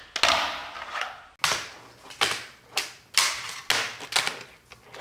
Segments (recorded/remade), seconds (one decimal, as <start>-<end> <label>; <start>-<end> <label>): 0.0-5.0 recorded